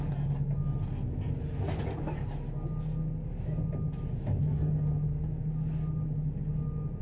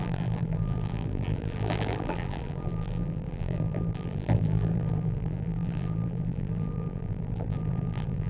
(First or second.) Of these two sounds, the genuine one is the first